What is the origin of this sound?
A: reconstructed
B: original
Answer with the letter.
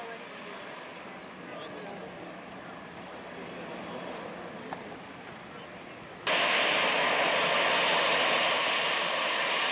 B